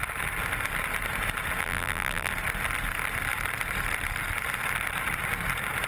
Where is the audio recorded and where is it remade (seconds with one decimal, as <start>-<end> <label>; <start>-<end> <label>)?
0.0-1.6 recorded; 1.6-2.3 remade; 2.3-5.9 recorded